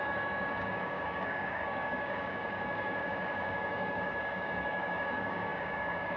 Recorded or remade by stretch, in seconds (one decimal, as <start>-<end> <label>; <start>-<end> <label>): 0.0-6.2 remade

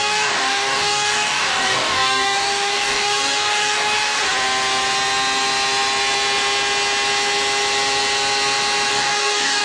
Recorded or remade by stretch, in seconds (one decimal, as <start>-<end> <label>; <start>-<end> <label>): 0.0-4.2 remade; 4.2-8.9 recorded; 8.9-9.6 remade

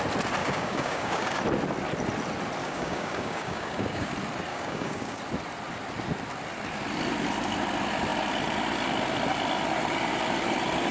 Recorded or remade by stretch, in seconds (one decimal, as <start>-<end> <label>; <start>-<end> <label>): 0.0-0.4 recorded; 0.4-1.4 remade; 1.4-2.6 recorded; 2.6-4.1 remade; 4.1-4.5 recorded; 4.5-5.2 remade; 5.2-10.9 recorded